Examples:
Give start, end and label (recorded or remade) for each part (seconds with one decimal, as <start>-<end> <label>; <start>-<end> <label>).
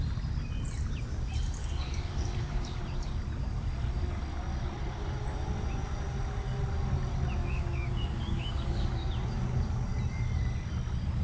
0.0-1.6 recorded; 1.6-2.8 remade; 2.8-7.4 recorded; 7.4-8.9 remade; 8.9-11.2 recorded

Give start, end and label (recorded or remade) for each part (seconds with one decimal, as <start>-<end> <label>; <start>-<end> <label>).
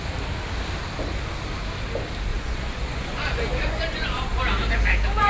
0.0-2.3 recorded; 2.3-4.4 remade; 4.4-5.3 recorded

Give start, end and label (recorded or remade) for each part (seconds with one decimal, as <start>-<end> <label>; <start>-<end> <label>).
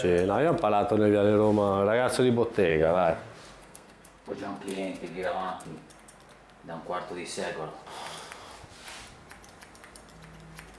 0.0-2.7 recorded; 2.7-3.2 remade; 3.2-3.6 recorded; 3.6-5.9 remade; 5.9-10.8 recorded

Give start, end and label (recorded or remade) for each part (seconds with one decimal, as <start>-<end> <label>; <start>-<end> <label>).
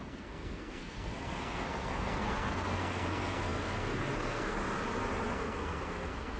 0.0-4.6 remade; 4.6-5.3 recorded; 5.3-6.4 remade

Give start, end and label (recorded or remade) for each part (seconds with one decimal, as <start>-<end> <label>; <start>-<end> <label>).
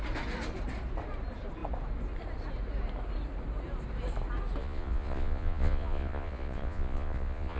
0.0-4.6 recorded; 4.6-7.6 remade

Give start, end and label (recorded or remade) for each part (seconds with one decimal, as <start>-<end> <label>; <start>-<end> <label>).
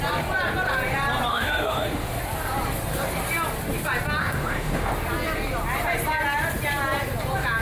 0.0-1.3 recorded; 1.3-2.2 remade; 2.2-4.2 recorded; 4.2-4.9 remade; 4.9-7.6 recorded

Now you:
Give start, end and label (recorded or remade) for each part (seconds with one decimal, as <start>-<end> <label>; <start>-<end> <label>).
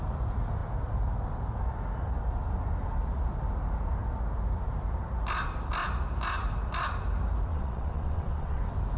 0.0-7.5 recorded; 7.5-8.6 remade; 8.6-9.0 recorded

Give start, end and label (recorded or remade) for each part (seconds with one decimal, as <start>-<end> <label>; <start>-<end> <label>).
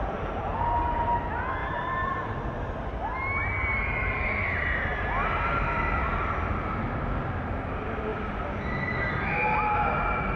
0.0-1.6 recorded; 1.6-2.3 remade; 2.3-3.4 recorded; 3.4-5.1 remade; 5.1-10.4 recorded